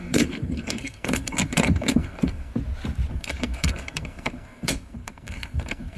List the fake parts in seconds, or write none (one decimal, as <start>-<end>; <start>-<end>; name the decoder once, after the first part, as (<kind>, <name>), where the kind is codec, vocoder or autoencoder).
0.0-2.5 (codec, SNAC); 3.1-6.0